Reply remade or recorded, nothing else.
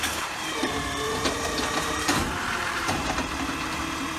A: remade